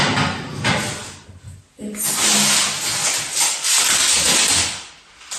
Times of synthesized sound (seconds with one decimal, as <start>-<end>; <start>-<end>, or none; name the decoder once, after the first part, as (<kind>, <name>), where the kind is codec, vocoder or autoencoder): none